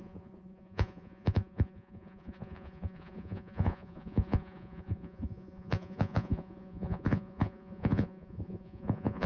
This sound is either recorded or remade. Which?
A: remade